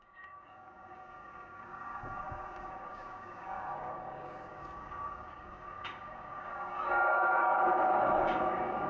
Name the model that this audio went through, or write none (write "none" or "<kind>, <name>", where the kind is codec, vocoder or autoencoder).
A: codec, DAC